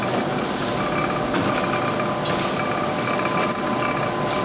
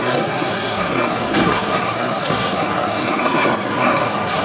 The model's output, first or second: second